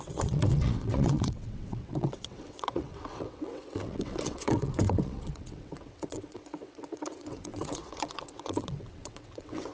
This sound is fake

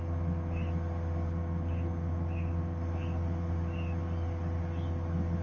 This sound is real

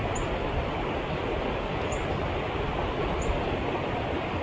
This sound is real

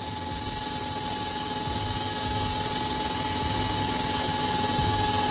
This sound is real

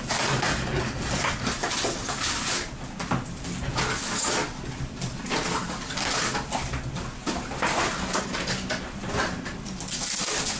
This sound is real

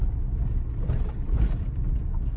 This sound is real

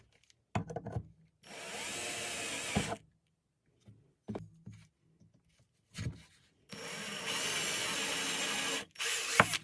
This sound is real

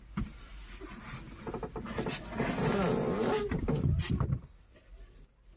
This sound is real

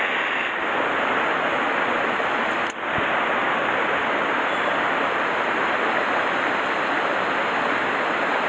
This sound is real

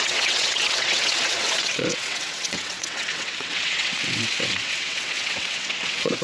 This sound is fake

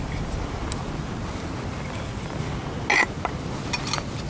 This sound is real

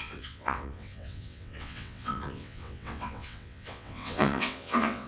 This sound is fake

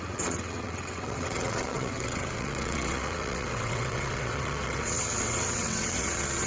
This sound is fake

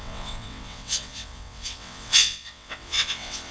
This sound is fake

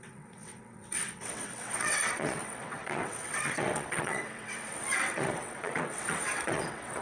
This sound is fake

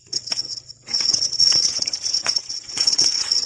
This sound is fake